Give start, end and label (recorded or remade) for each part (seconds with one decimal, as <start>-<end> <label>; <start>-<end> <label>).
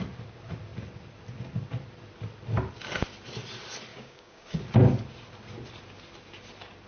0.0-3.9 recorded; 3.9-4.6 remade; 4.6-6.9 recorded